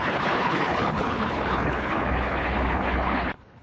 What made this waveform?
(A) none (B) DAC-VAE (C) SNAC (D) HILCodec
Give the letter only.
D